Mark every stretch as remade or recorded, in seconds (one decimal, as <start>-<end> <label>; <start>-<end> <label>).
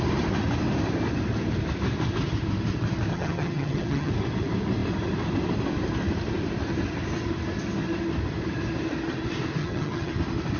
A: 0.0-3.1 recorded; 3.1-4.1 remade; 4.1-9.6 recorded; 9.6-10.1 remade; 10.1-10.6 recorded